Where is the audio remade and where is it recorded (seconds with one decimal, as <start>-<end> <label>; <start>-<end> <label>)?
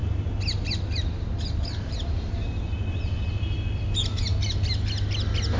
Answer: 0.0-5.6 recorded